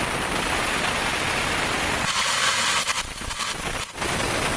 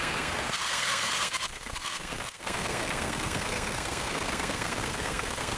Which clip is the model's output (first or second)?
second